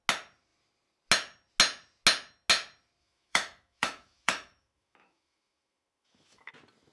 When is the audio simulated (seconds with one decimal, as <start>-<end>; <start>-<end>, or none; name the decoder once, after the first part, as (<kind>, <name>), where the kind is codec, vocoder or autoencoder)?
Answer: 3.0-6.5 (autoencoder, DAC-VAE)